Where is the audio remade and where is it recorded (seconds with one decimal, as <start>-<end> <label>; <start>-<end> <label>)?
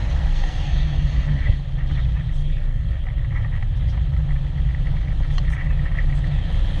0.0-1.6 remade; 1.6-2.4 recorded; 2.4-3.0 remade; 3.0-6.8 recorded